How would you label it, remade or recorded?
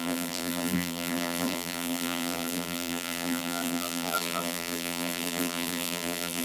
remade